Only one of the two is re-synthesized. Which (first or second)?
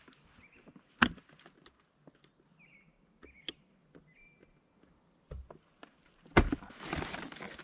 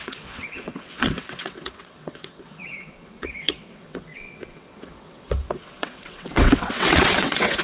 second